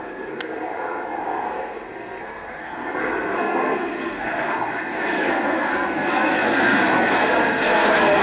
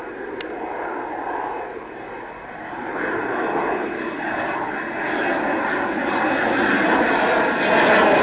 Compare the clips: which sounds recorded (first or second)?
second